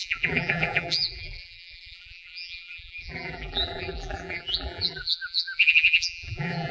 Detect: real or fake fake